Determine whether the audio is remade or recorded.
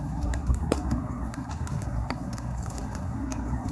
remade